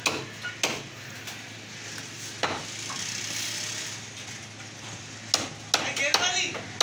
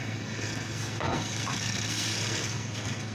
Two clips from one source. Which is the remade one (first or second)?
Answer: second